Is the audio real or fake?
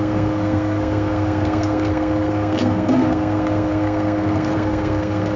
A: fake